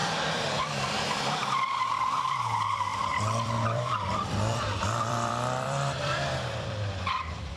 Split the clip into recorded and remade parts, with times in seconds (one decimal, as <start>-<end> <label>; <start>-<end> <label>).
0.0-7.6 remade